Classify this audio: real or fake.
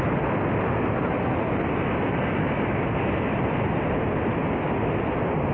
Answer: real